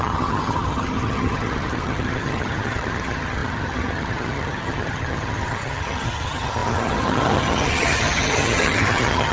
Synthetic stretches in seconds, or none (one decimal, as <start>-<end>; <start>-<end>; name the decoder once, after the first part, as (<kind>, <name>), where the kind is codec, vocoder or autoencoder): 0.0-9.3 (vocoder, HiFi-GAN)